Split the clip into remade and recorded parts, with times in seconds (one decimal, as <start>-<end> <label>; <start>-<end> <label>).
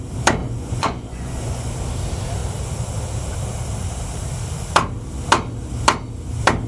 0.0-0.4 recorded; 0.4-1.7 remade; 1.7-6.7 recorded